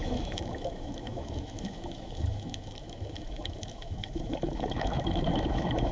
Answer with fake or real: fake